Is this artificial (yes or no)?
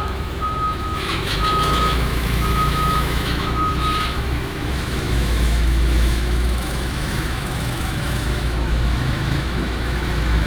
yes